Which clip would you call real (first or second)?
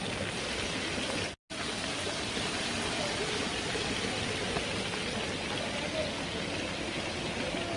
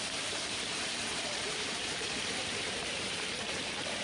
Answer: first